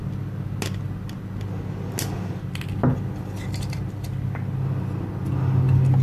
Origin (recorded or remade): recorded